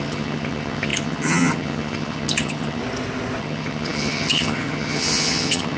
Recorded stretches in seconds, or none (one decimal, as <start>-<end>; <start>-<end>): 2.8-3.4